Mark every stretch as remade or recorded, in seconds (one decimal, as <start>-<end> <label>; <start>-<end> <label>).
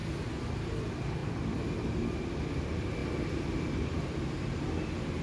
0.0-5.2 recorded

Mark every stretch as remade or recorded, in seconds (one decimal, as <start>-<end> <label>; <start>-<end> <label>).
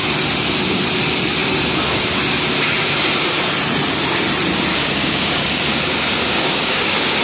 0.0-4.7 recorded; 4.7-5.6 remade; 5.6-6.2 recorded; 6.2-7.2 remade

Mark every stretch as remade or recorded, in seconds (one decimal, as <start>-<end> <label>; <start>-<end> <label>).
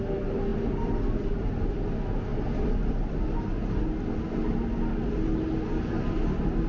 0.0-6.7 recorded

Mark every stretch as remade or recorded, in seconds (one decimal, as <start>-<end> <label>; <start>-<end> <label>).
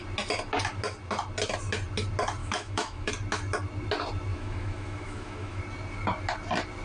0.0-2.4 recorded; 2.4-3.1 remade; 3.1-4.3 recorded; 4.3-5.6 remade; 5.6-6.8 recorded